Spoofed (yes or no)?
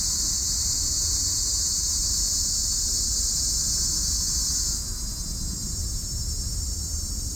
no